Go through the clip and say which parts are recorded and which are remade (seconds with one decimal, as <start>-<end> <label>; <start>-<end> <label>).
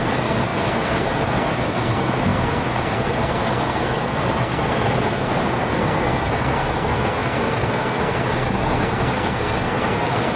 0.0-10.4 remade